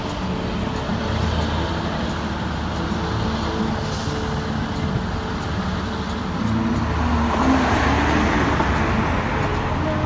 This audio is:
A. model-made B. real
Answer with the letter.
B